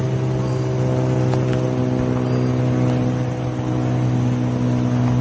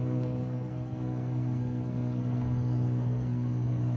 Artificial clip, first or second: second